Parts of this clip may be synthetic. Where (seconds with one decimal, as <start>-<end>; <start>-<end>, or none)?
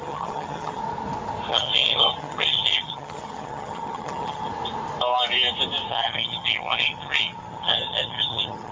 0.0-0.8; 1.5-4.5; 5.9-8.7